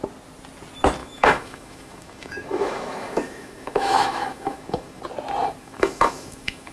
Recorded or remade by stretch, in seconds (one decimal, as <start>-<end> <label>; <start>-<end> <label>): 0.0-1.0 recorded; 1.0-5.0 remade; 5.0-5.6 recorded; 5.6-6.7 remade